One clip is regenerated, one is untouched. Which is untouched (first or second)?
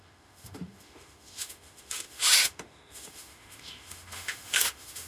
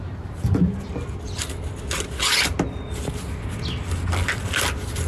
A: second